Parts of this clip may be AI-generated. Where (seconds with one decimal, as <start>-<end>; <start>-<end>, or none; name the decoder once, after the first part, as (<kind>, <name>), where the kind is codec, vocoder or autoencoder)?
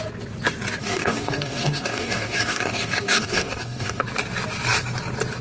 0.8-4.0 (codec, DAC)